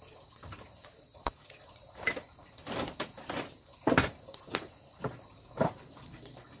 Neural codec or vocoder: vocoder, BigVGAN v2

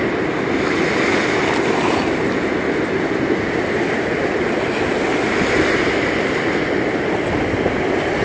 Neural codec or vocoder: none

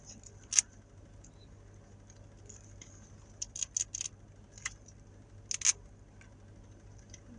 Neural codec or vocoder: none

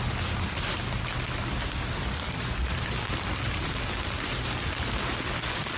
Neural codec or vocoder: none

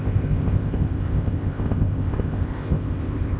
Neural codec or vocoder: codec, ZipCodec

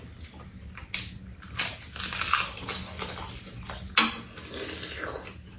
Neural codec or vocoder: none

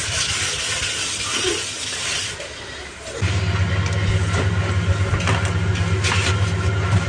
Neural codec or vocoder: none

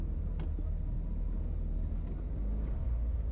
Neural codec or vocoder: none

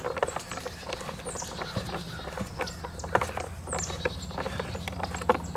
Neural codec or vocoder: none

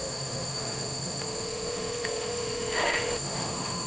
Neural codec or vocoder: autoencoder, DAC-VAE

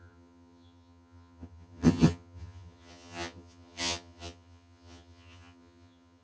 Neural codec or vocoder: vocoder, HiFi-GAN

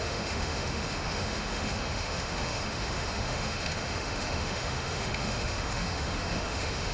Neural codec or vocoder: autoencoder, DAC-VAE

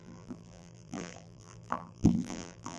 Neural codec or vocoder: vocoder, BigVGAN v2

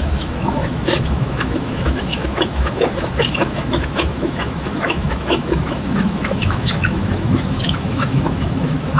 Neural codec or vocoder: autoencoder, DAC-VAE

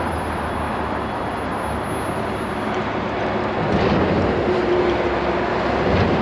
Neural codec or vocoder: none